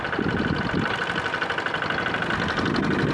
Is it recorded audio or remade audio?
recorded